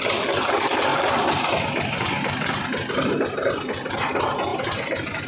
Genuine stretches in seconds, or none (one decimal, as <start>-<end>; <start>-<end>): 0.0-5.3